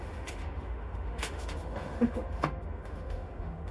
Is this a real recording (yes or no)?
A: no